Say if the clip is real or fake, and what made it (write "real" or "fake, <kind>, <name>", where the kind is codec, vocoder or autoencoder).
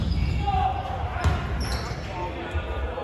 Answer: real